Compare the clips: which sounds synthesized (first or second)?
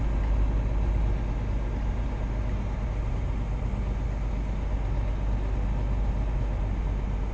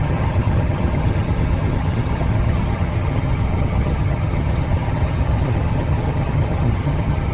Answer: second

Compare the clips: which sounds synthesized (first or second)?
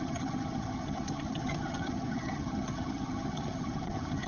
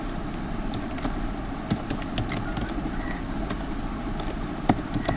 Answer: first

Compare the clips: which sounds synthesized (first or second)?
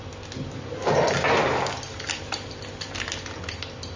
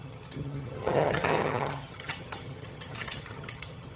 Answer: second